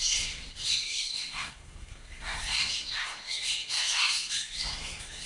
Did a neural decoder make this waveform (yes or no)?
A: yes